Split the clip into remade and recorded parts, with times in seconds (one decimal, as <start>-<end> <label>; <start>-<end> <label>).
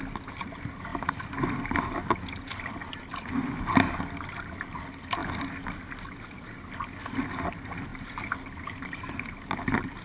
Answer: 0.0-10.0 recorded